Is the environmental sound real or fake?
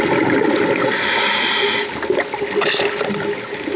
real